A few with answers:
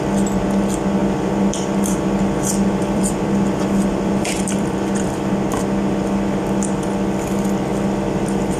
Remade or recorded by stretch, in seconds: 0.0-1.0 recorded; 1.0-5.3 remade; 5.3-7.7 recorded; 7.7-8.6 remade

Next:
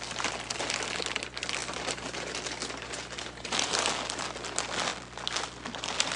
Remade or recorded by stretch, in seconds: 0.0-1.6 recorded; 1.6-3.9 remade; 3.9-6.2 recorded

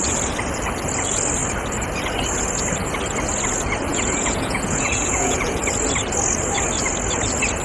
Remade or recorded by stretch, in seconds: 0.0-3.9 recorded; 3.9-5.6 remade; 5.6-7.6 recorded